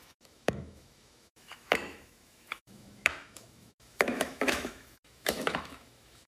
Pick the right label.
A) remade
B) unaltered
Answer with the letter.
A